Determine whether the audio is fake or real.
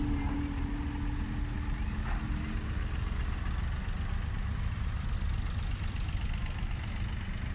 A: real